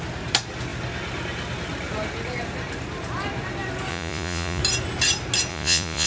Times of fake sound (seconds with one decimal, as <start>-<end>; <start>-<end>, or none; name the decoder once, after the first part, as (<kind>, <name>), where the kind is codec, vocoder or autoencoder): 3.9-4.6 (vocoder, Vocos); 5.5-6.1